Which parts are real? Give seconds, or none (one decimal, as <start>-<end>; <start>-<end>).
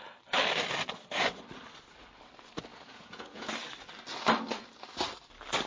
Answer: 0.0-2.7; 3.5-5.7